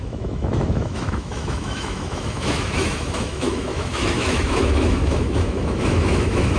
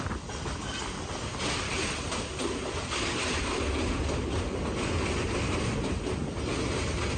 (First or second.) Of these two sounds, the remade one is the first